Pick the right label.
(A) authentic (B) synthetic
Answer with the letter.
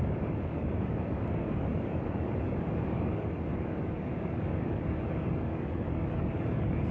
B